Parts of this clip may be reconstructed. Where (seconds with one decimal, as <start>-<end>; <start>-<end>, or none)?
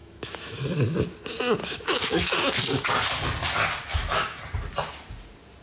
0.0-0.6; 1.6-2.4; 3.9-4.4